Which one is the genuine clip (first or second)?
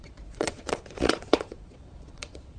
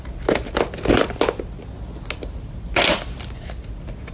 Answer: second